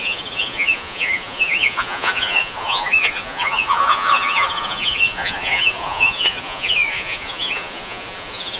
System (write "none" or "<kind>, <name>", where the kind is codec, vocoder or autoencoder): vocoder, Vocos